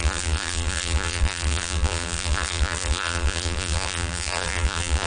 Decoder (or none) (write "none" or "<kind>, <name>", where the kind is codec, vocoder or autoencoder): vocoder, BigVGAN v2